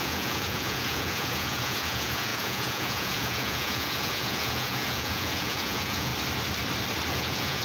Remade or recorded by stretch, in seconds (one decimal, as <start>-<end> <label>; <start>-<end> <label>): 0.0-6.1 remade; 6.1-7.1 recorded; 7.1-7.6 remade